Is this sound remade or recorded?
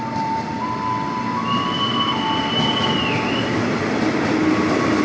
remade